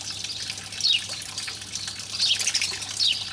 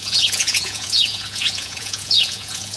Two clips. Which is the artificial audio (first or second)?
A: second